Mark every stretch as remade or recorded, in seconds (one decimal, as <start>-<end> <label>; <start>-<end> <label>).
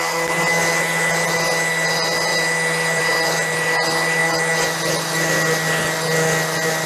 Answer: 0.0-6.9 recorded